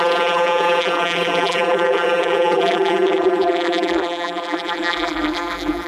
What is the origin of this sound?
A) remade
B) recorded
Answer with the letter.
A